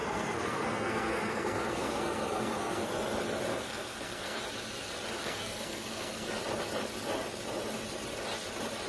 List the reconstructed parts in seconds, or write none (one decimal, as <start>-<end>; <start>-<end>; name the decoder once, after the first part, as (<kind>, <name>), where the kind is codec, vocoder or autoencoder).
0.0-2.9 (codec, SNAC); 3.5-4.4; 5.2-6.4

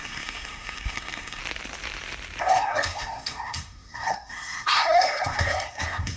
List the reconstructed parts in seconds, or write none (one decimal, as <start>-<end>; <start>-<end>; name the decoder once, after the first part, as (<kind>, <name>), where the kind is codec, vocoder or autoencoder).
0.0-1.4 (codec, SNAC); 2.4-6.2

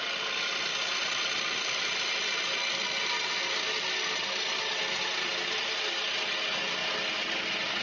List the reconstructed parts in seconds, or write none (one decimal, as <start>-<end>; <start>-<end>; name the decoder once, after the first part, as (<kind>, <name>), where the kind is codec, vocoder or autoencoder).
none

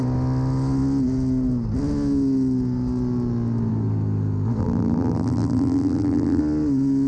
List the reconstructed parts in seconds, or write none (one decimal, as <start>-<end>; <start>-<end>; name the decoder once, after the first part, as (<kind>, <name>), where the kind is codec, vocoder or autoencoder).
4.6-6.4 (vocoder, BigVGAN v2)

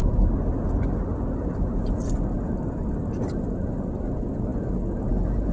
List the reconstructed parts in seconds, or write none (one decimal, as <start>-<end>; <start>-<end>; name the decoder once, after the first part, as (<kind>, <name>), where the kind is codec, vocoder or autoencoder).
none

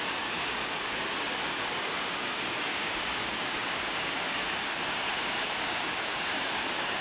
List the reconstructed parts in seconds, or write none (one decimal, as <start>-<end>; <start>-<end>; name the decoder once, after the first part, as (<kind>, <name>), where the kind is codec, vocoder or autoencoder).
0.0-7.0 (codec, DAC)